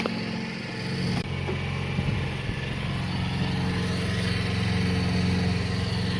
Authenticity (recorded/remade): recorded